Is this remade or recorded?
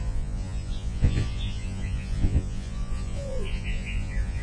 remade